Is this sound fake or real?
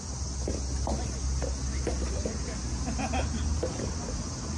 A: real